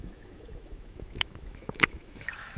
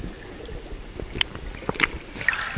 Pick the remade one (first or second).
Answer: first